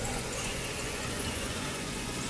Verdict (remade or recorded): remade